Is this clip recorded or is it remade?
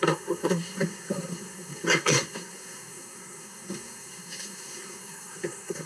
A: remade